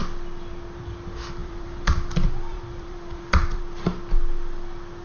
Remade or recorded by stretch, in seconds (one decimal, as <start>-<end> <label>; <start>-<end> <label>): 0.0-1.4 recorded; 1.4-3.6 remade; 3.6-5.0 recorded